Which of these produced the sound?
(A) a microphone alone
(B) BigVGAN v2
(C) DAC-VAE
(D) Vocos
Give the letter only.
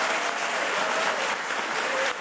B